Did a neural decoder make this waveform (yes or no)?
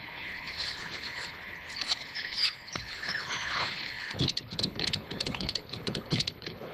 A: yes